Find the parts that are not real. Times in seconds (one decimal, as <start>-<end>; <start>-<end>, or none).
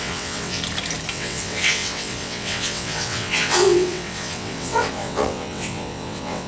0.0-0.6; 1.1-6.5